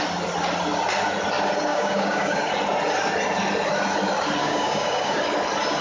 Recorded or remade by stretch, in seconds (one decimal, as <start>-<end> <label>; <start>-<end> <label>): 0.0-1.7 recorded; 1.7-2.5 remade; 2.5-4.4 recorded; 4.4-5.2 remade; 5.2-5.8 recorded